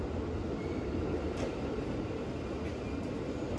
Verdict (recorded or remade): recorded